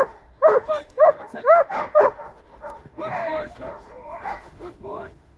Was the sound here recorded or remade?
remade